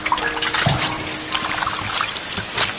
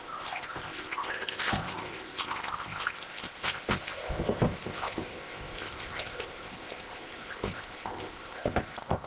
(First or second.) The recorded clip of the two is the first